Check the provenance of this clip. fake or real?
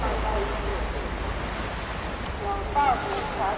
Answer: real